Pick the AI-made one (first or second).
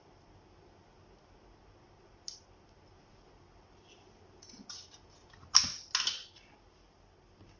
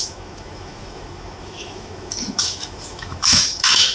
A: second